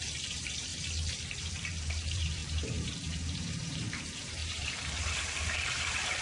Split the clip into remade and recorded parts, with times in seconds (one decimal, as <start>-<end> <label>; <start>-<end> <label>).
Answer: 0.0-0.7 remade; 0.7-1.3 recorded; 1.3-6.2 remade